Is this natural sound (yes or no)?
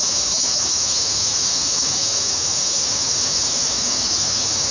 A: no